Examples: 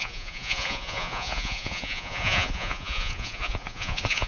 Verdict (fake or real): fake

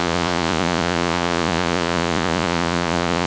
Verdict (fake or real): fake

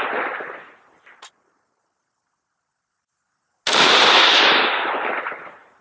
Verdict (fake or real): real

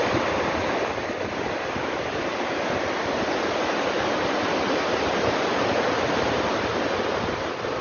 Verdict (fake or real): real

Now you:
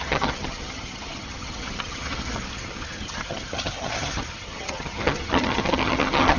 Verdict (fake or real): fake